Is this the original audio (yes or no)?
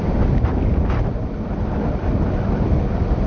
yes